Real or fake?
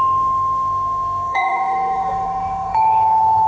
fake